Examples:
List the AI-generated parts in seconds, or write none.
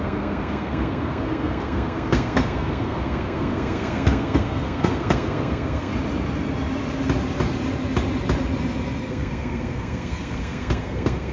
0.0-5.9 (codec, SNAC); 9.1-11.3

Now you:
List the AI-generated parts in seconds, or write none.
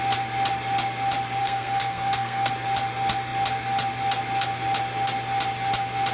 1.4-2.5 (codec, SNAC)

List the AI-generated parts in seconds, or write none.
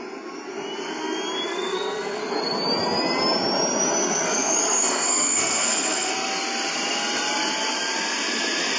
1.5-2.2 (codec, SNAC); 4.0-6.1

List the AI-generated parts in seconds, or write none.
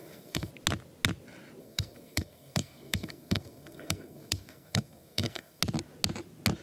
0.0-0.5 (codec, SNAC); 1.6-5.6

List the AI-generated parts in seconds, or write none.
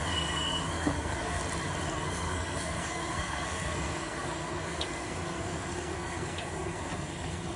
0.0-1.4 (codec, SNAC); 1.9-7.6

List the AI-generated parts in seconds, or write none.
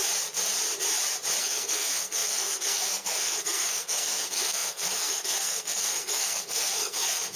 1.4-7.4 (codec, SNAC)